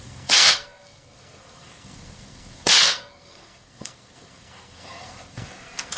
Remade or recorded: remade